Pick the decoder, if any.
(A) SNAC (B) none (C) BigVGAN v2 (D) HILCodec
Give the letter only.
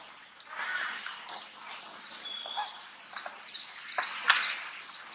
B